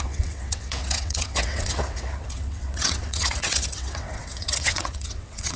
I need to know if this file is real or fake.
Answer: fake